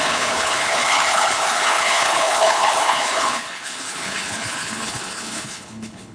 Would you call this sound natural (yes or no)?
no